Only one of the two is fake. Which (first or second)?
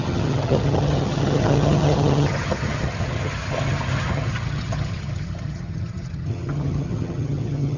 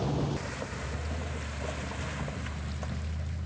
first